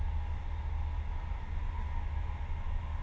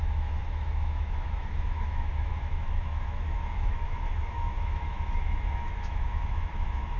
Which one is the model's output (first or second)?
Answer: second